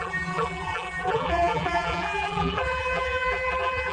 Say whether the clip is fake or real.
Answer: fake